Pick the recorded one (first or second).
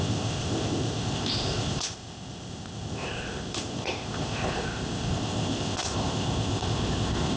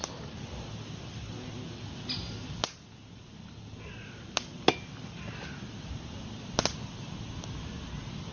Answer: second